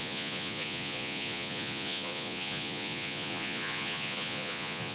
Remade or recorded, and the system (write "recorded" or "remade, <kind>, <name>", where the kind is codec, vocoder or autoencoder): remade, vocoder, Vocos